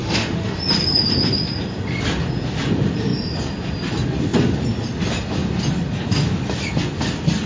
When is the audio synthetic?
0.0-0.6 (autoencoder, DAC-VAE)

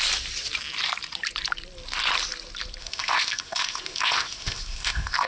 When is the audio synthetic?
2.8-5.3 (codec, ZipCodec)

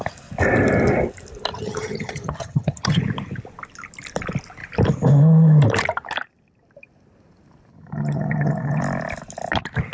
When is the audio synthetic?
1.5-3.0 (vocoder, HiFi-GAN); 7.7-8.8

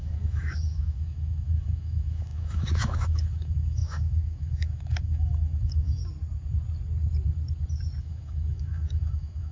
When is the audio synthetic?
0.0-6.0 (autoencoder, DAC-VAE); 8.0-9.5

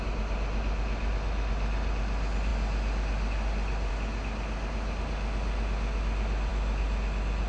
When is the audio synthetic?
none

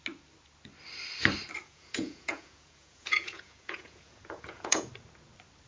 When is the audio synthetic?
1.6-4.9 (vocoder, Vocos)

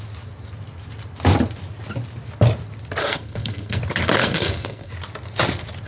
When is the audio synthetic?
3.0-3.8 (codec, SNAC); 4.2-4.9